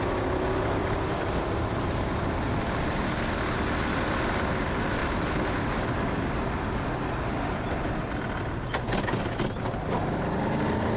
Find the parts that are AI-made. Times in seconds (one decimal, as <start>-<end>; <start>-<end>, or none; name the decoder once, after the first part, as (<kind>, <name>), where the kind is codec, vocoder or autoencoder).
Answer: 0.8-2.9 (vocoder, BigVGAN v2); 5.0-5.6